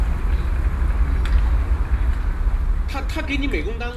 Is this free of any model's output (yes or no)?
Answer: yes